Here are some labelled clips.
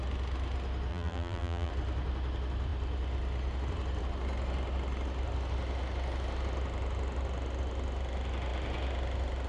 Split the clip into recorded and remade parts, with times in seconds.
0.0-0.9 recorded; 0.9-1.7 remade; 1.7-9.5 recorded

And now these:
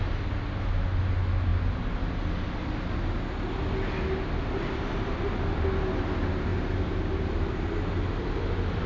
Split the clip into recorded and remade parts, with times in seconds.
0.0-8.9 recorded

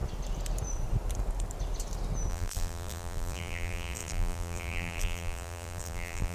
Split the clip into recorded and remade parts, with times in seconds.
0.0-2.3 recorded; 2.3-6.3 remade

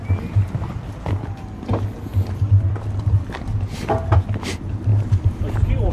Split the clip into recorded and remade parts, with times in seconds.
0.0-4.9 recorded; 4.9-5.9 remade

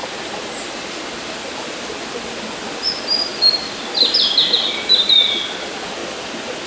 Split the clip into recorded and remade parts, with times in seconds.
0.0-6.0 remade; 6.0-6.7 recorded

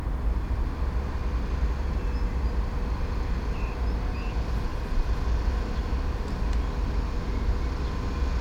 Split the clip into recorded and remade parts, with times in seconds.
0.0-1.2 recorded; 1.2-1.9 remade; 1.9-4.7 recorded; 4.7-5.4 remade; 5.4-8.4 recorded